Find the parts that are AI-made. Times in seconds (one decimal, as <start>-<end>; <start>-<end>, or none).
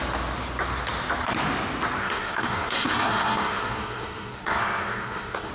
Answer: 2.0-5.5